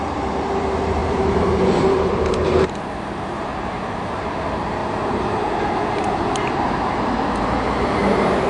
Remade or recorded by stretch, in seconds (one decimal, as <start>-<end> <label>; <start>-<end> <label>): 0.0-4.8 remade; 4.8-7.4 recorded; 7.4-8.5 remade